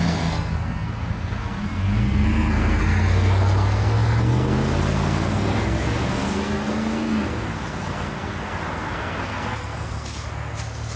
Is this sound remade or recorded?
remade